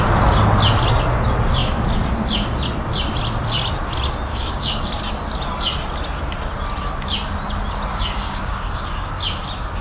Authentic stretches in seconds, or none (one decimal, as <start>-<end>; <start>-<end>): 0.0-4.3; 4.9-7.9; 9.1-9.8